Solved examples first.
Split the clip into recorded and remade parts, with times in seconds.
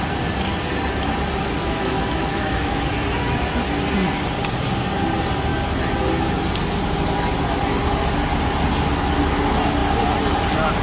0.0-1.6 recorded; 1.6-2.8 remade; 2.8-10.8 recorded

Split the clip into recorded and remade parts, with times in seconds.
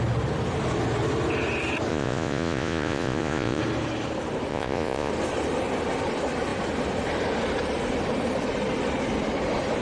0.0-1.9 recorded; 1.9-3.6 remade; 3.6-4.5 recorded; 4.5-5.1 remade; 5.1-9.8 recorded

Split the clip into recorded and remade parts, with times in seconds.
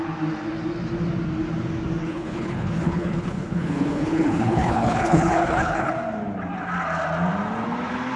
0.0-2.0 recorded; 2.0-5.9 remade; 5.9-8.2 recorded